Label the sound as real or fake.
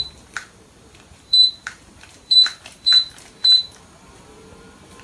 fake